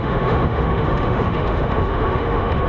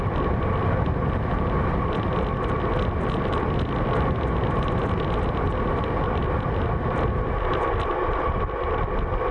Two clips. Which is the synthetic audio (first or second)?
first